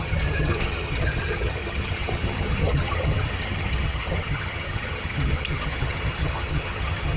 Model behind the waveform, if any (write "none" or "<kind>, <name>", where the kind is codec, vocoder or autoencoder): vocoder, HiFi-GAN